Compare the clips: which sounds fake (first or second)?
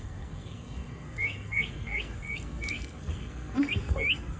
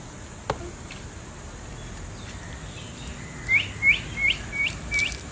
first